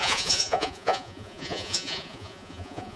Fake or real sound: fake